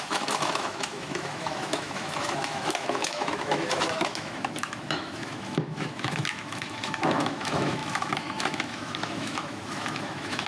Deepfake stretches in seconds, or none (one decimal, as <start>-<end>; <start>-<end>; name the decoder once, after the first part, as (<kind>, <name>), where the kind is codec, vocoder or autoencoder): 0.0-10.5 (autoencoder, DAC-VAE)